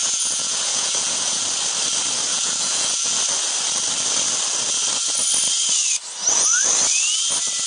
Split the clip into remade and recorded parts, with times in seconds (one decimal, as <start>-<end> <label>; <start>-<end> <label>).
0.0-1.4 remade; 1.4-2.3 recorded; 2.3-3.2 remade; 3.2-7.7 recorded